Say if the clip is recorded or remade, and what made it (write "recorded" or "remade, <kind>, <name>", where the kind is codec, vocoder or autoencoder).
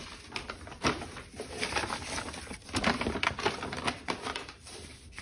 remade, vocoder, BigVGAN v2